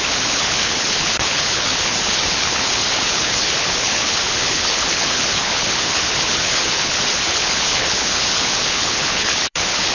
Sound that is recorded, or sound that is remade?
remade